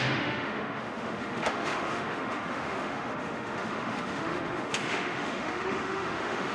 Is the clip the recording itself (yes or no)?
no